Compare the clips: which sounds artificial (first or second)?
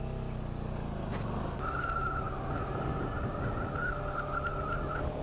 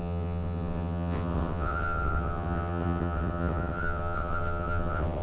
second